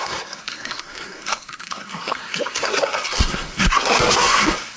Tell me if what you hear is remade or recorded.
remade